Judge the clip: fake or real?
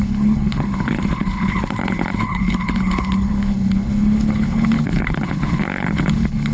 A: fake